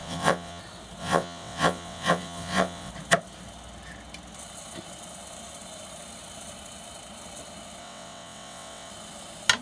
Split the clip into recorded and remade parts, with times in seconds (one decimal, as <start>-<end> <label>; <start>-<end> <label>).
0.0-0.6 remade; 0.6-1.0 recorded; 1.0-2.9 remade; 2.9-7.8 recorded; 7.8-8.9 remade; 8.9-9.6 recorded